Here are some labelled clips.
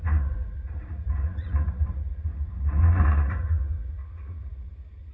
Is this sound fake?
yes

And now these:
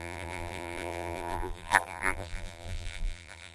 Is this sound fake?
yes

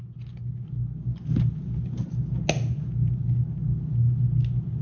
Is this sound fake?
no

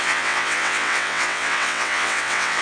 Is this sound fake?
yes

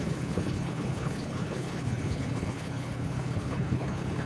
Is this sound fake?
yes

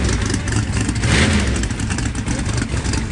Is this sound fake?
no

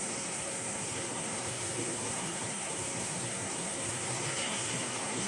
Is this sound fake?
yes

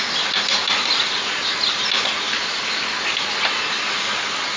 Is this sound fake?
no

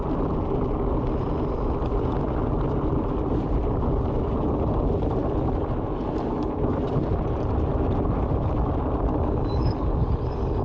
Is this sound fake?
no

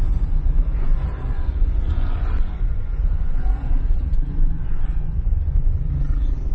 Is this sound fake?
yes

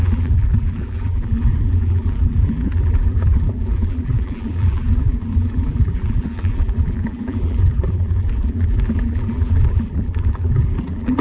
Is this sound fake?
yes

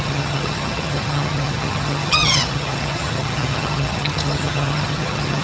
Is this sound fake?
yes